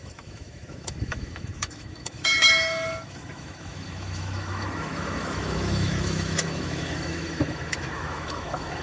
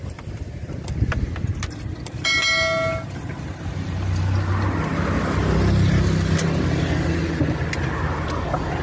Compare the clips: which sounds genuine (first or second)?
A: second